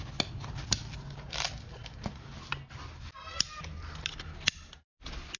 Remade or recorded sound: recorded